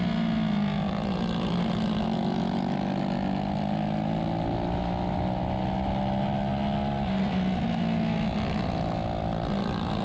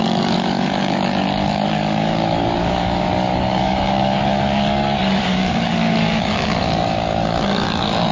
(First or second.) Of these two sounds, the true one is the first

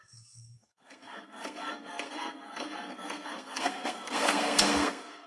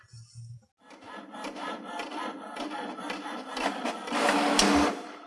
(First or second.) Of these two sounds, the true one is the second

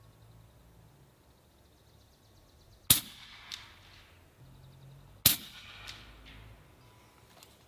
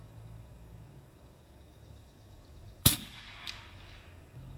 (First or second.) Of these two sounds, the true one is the first